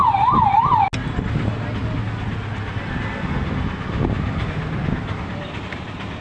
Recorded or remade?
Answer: recorded